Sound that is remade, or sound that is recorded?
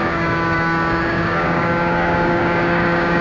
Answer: remade